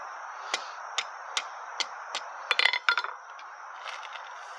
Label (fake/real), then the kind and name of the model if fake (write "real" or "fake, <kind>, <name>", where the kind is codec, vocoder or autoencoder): real